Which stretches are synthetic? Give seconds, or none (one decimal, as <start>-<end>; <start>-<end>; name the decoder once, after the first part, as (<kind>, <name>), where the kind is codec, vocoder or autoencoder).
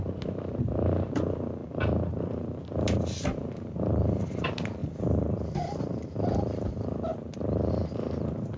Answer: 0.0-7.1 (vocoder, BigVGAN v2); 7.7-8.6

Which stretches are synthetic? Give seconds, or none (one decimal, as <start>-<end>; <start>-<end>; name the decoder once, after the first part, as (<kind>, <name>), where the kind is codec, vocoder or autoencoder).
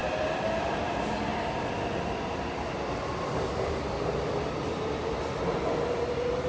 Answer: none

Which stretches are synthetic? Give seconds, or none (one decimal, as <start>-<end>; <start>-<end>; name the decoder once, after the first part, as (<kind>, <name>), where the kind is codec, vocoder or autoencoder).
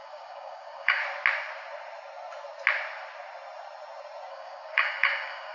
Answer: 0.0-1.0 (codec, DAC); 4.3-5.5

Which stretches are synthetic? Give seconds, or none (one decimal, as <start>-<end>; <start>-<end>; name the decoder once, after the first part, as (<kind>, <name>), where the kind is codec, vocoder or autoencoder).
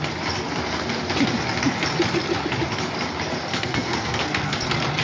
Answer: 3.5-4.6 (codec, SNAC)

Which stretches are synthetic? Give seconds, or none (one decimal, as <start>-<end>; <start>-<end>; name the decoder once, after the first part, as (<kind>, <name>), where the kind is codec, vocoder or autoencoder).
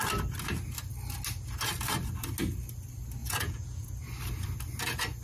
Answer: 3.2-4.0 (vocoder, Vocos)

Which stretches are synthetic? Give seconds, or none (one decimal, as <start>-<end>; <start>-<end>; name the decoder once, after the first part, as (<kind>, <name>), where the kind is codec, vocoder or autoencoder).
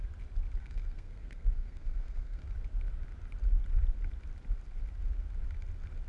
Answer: 0.6-2.4 (codec, SNAC)